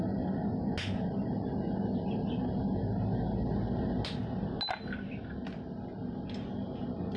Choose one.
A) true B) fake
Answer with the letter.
A